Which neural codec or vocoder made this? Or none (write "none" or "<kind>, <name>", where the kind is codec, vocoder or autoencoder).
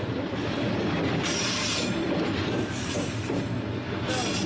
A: none